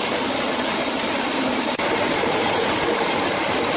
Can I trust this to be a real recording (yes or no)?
no